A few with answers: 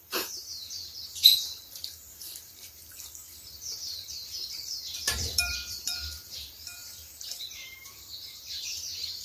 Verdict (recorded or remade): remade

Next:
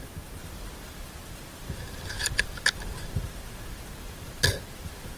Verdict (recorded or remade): recorded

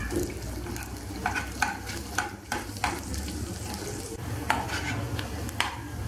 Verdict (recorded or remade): remade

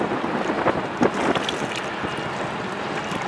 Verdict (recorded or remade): recorded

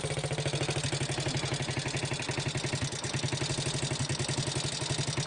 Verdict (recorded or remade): recorded